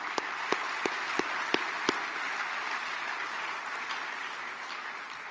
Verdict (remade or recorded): recorded